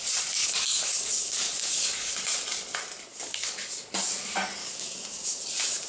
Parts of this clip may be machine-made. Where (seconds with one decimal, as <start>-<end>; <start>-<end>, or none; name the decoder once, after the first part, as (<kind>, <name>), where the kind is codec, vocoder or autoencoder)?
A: 0.4-2.2 (codec, DAC); 3.1-3.8; 4.6-5.4